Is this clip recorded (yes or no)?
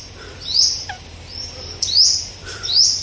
yes